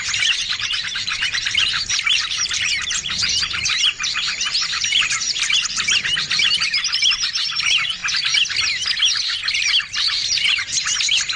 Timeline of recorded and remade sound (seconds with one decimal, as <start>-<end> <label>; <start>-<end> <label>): 0.0-8.0 remade; 8.0-9.5 recorded; 9.5-11.4 remade